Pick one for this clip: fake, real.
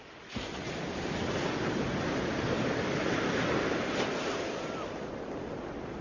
real